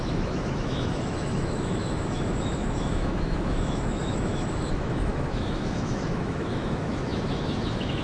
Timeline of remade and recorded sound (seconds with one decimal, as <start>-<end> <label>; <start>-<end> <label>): 0.0-8.0 remade